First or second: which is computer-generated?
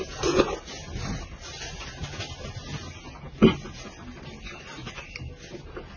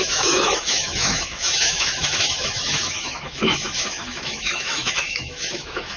second